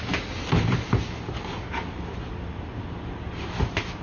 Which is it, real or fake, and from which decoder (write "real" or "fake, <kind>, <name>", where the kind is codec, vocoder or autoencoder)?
real